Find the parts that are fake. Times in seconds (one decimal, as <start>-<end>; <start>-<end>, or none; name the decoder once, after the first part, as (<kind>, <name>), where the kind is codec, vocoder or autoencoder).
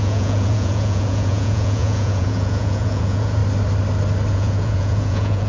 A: 0.0-3.4 (vocoder, Vocos); 4.3-5.5